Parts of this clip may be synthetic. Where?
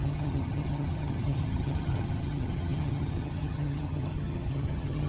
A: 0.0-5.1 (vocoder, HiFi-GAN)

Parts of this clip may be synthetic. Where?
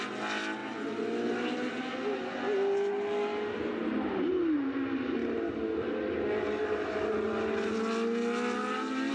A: none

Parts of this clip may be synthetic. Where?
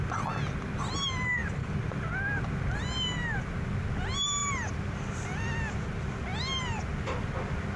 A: none